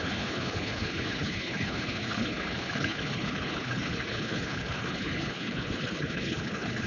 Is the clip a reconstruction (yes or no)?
yes